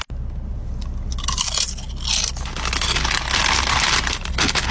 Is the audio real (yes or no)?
yes